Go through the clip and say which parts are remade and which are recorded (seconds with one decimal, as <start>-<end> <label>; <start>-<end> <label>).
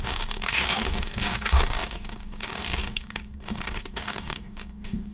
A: 0.0-5.1 remade